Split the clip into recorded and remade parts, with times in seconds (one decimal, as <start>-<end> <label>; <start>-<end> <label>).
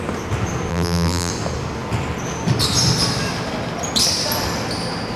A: 0.0-0.7 recorded; 0.7-1.3 remade; 1.3-5.2 recorded